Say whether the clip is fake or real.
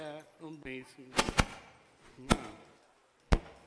real